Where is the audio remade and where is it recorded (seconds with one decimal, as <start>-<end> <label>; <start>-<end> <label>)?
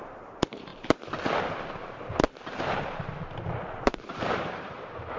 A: 0.0-0.7 remade; 0.7-3.8 recorded; 3.8-5.2 remade